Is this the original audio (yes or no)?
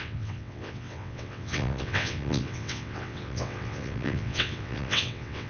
no